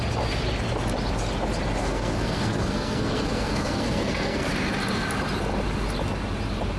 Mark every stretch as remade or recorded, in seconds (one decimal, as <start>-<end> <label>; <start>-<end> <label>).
0.0-1.8 recorded; 1.8-4.5 remade; 4.5-6.8 recorded